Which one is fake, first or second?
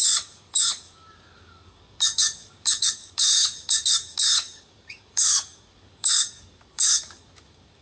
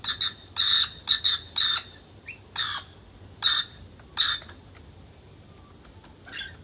first